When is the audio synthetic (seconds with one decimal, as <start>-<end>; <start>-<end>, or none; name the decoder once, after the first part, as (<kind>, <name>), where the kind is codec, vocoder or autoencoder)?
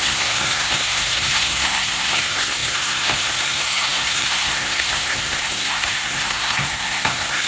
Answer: 0.0-7.5 (codec, SNAC)